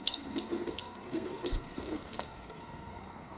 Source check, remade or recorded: remade